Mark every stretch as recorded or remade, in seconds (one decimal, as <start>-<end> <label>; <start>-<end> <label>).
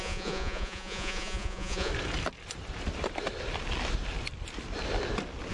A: 0.0-1.9 remade; 1.9-5.5 recorded